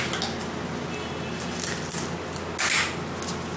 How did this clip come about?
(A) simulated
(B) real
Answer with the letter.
B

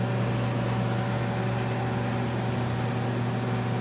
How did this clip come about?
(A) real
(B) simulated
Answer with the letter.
A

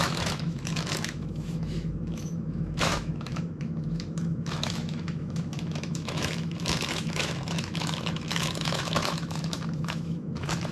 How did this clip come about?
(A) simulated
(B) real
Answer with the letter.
A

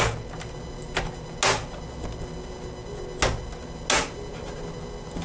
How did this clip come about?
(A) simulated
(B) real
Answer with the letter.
B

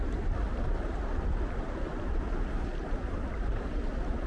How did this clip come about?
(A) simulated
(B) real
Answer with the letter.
B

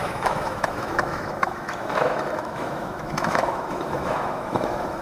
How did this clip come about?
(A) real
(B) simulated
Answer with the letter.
B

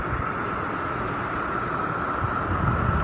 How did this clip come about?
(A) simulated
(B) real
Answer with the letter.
B